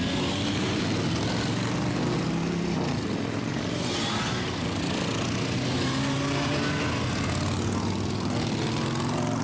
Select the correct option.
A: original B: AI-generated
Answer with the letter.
A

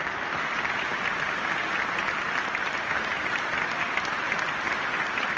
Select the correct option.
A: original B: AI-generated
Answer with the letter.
A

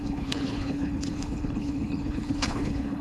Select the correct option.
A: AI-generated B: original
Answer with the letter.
A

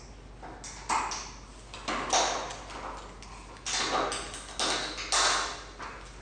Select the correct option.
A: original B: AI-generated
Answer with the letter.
A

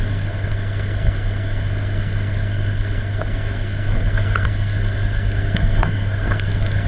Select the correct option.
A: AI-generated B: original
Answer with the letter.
A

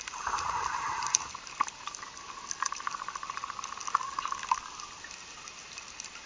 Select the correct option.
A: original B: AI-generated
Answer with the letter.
A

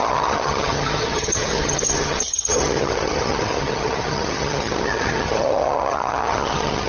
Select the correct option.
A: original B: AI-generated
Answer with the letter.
B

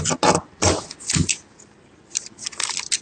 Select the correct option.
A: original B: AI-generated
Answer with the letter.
A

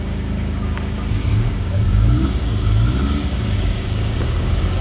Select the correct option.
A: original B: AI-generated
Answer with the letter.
B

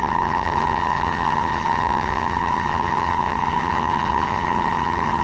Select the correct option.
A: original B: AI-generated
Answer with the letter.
B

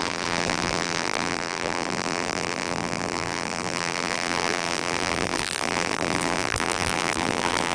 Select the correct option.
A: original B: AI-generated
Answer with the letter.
B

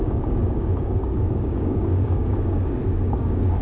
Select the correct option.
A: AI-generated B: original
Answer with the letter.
A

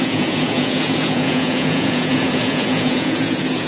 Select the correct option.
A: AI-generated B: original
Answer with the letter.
A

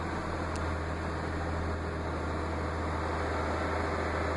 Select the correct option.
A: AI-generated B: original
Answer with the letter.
B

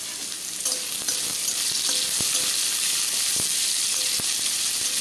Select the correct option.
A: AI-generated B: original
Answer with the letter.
B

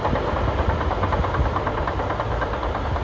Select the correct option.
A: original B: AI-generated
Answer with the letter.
A